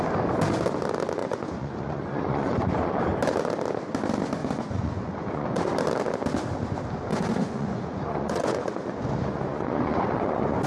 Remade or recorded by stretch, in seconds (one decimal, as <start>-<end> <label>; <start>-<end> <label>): 0.0-1.2 recorded; 1.2-3.0 remade; 3.0-4.4 recorded; 4.4-5.7 remade; 5.7-7.1 recorded; 7.1-10.7 remade